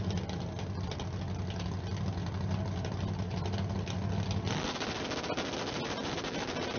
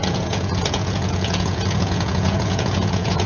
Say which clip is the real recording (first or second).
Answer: first